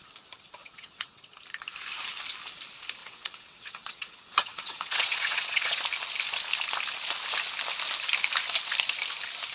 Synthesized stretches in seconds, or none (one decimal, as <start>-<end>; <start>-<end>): 0.6-1.2; 3.0-5.8